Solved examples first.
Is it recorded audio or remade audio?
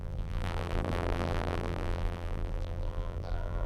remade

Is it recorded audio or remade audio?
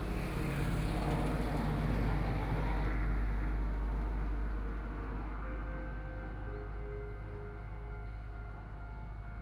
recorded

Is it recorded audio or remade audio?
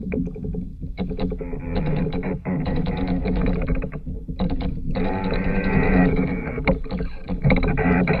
remade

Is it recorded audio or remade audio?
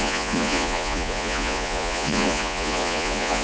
remade